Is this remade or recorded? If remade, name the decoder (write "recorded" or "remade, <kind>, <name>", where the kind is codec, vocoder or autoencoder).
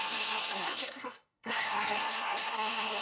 remade, codec, SNAC